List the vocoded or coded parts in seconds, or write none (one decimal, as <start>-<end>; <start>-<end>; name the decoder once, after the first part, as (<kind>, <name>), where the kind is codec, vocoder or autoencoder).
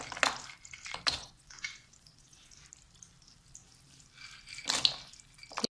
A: 1.2-2.5 (vocoder, Vocos)